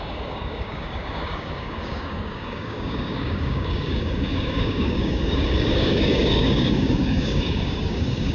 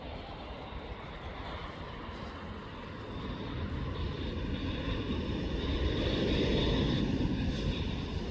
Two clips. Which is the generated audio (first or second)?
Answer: first